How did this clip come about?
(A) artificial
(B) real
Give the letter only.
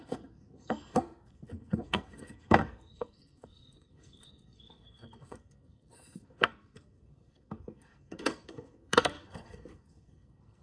A